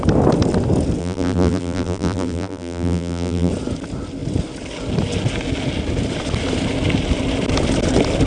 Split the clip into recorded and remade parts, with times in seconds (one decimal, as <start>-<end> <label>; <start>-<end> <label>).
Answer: 0.0-1.0 recorded; 1.0-3.5 remade; 3.5-8.3 recorded